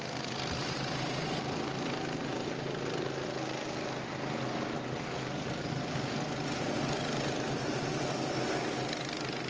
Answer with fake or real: real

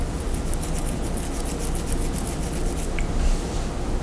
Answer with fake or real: real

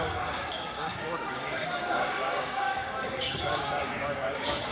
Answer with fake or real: fake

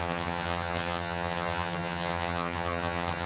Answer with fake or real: fake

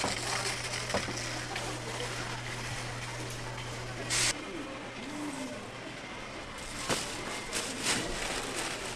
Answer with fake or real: real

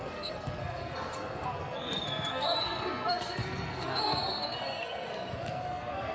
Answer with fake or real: fake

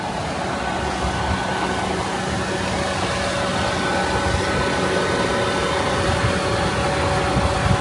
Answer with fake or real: real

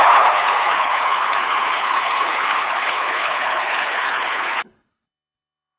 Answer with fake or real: fake